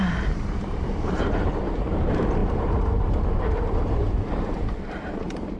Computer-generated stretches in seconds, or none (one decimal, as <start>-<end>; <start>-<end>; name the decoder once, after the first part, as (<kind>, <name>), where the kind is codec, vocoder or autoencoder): 0.0-5.6 (vocoder, BigVGAN v2)